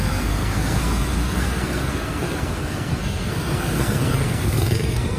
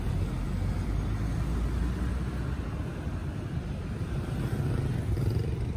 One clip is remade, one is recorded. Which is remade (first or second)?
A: first